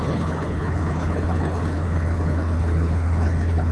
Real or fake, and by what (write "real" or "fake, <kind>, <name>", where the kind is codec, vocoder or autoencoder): fake, codec, HILCodec